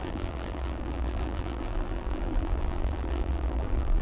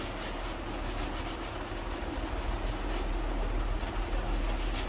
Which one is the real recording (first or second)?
second